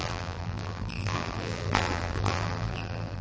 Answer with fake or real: fake